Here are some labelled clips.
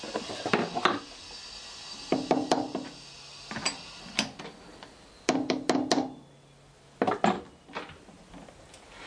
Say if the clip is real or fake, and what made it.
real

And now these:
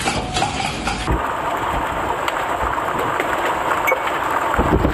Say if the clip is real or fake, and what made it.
real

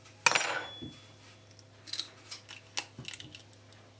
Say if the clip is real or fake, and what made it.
real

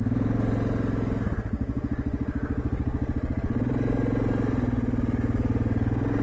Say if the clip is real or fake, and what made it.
real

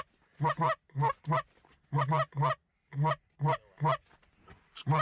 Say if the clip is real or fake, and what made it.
real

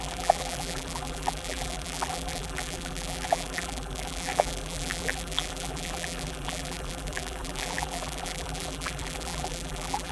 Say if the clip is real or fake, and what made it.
fake, vocoder, BigVGAN v2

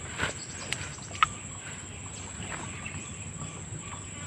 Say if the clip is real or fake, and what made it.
real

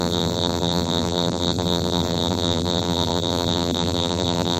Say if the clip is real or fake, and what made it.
fake, vocoder, BigVGAN v2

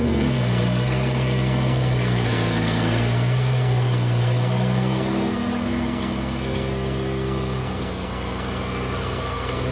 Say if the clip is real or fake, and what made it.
fake, codec, SNAC